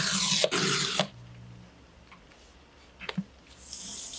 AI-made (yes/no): no